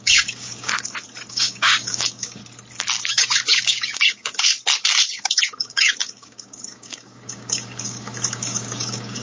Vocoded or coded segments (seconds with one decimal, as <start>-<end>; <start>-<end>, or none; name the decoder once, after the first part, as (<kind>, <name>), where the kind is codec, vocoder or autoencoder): 0.0-0.7 (codec, DAC); 1.3-2.4; 3.1-4.5; 5.1-9.2